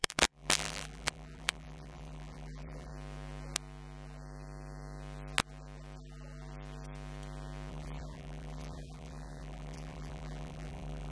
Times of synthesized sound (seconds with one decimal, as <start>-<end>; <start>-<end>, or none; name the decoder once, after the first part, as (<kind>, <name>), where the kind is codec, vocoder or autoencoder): 0.0-2.9 (vocoder, BigVGAN v2); 7.7-11.1